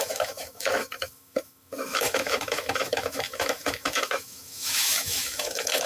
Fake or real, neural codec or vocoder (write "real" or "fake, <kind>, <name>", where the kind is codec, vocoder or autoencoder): fake, autoencoder, DAC-VAE